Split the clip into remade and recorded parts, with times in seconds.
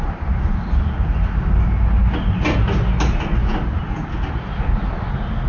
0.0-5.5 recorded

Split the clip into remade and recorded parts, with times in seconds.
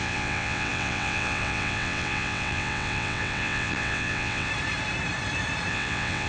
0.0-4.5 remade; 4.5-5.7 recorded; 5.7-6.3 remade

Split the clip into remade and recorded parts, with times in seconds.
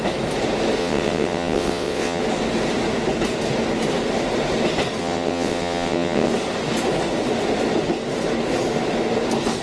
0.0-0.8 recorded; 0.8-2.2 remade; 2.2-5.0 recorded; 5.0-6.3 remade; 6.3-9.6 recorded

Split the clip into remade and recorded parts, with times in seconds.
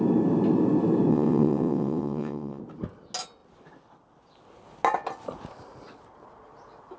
0.0-1.1 recorded; 1.1-2.6 remade; 2.6-7.0 recorded